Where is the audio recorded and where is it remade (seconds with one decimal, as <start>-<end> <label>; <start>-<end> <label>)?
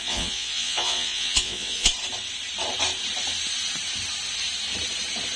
0.0-1.9 remade; 1.9-5.4 recorded